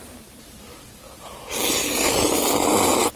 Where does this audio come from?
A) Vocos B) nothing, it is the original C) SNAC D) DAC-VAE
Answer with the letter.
B